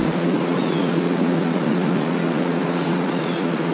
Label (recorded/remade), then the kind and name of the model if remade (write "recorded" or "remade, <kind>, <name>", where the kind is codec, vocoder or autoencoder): remade, vocoder, Vocos